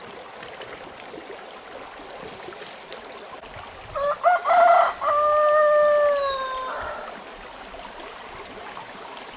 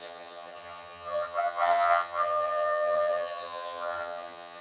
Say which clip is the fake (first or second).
second